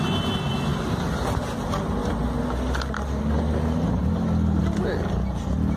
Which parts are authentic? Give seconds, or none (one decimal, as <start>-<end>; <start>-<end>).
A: 0.0-5.8